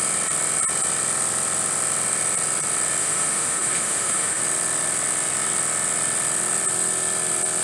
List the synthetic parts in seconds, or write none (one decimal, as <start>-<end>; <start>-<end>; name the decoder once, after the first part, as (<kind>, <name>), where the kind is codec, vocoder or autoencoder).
3.0-4.4 (autoencoder, DAC-VAE)